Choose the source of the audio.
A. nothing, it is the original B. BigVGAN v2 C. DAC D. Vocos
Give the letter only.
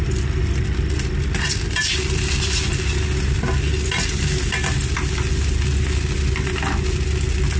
A